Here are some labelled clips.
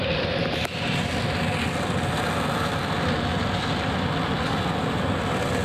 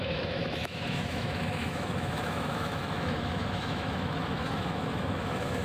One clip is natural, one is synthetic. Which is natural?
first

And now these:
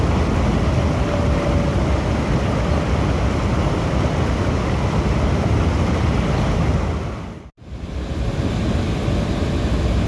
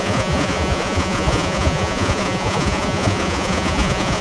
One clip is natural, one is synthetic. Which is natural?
first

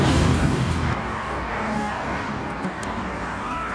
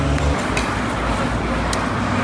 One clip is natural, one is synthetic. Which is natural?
second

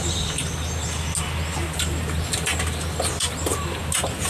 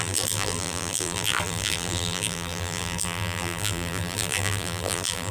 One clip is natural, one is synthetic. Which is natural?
first